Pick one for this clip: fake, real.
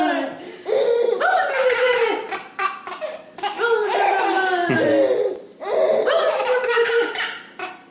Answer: fake